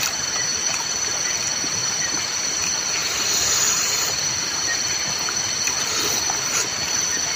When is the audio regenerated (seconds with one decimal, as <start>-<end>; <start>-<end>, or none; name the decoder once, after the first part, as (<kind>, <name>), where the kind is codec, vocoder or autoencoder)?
1.8-2.6 (vocoder, BigVGAN v2)